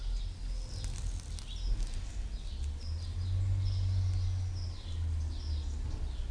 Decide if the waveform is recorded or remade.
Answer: recorded